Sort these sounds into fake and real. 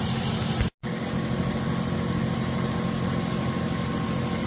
real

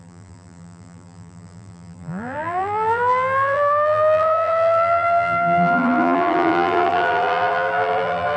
fake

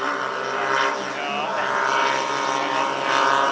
real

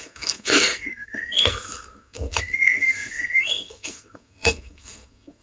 fake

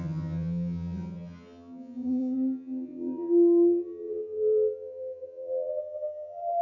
fake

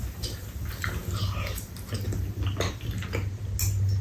real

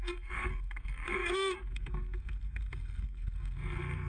fake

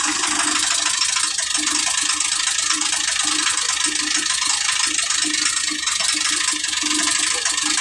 real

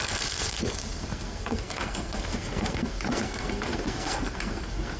fake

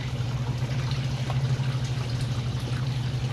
real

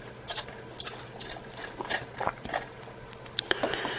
fake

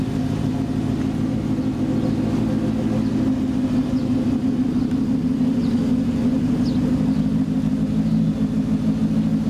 real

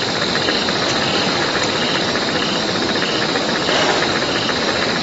fake